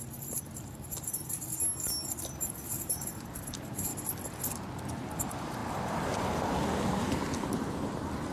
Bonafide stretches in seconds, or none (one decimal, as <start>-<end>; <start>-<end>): 1.5-2.2; 3.9-4.9